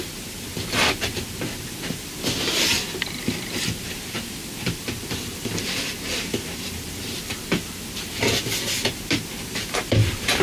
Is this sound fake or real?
fake